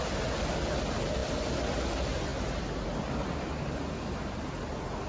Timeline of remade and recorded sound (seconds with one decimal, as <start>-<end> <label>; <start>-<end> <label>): 0.0-5.1 recorded